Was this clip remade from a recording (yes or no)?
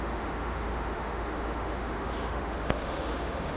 yes